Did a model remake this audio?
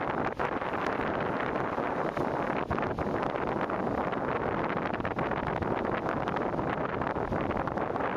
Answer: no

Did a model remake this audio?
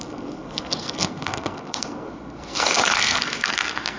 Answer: yes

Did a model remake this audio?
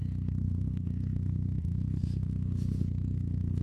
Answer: yes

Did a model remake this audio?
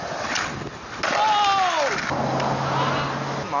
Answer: no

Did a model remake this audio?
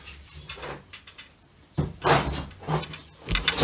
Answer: no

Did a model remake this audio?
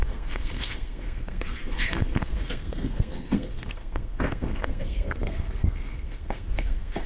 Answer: yes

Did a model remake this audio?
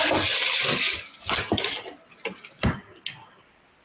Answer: no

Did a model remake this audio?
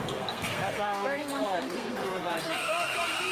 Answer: yes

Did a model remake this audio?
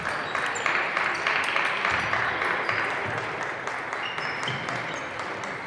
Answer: no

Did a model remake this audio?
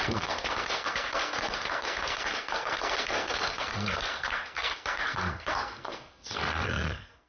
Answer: yes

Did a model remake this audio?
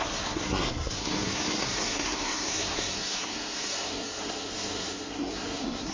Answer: yes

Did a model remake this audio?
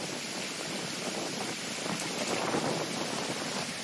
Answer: no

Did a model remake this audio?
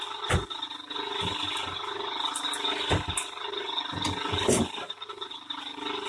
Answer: no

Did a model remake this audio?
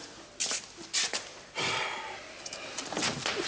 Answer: no